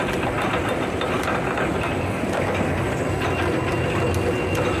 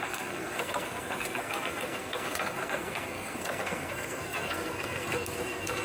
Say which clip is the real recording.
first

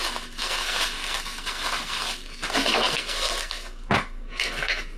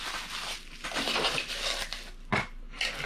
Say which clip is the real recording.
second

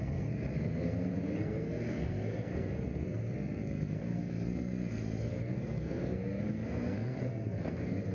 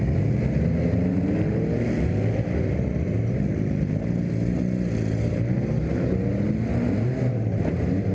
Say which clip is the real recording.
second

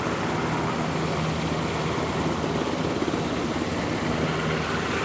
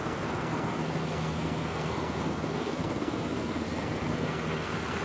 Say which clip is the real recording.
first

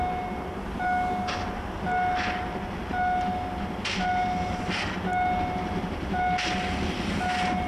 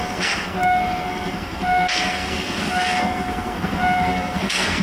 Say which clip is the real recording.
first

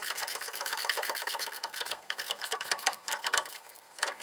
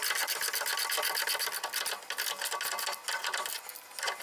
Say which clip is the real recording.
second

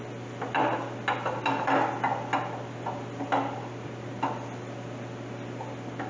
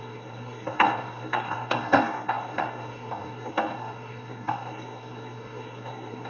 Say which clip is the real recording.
first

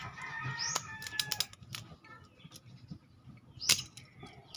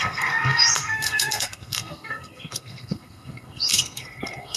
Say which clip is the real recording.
first